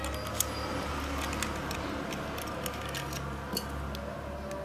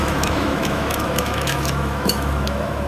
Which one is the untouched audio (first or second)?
first